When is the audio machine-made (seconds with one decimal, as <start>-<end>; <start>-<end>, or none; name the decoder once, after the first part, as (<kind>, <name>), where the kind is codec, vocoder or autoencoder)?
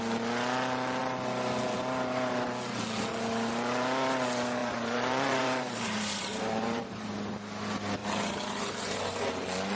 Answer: 4.6-6.8 (vocoder, BigVGAN v2); 8.0-9.3